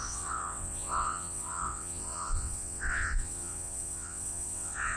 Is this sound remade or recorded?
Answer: remade